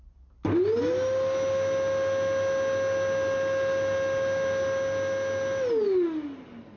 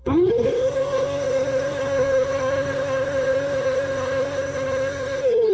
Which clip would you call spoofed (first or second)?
second